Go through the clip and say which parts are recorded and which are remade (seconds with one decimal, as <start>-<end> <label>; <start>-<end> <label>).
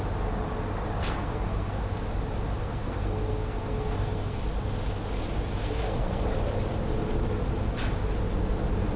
0.0-1.0 recorded; 1.0-1.8 remade; 1.8-2.6 recorded; 2.6-4.4 remade; 4.4-5.6 recorded; 5.6-6.2 remade; 6.2-9.0 recorded